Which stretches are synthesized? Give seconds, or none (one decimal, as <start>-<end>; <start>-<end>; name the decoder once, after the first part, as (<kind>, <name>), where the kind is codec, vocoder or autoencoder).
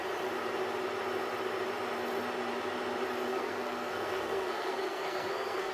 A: 3.3-5.7 (codec, SNAC)